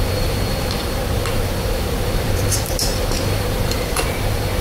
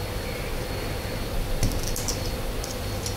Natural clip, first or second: second